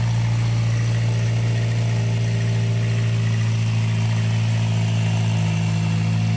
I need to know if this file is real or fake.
real